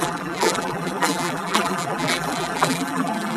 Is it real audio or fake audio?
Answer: fake